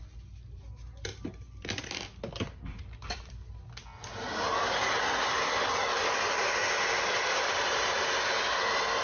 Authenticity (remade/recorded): recorded